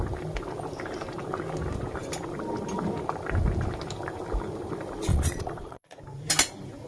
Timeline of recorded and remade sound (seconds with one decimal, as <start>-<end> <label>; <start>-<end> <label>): 0.0-5.1 recorded; 5.1-6.0 remade; 6.0-6.9 recorded